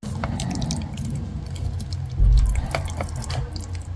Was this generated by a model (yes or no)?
no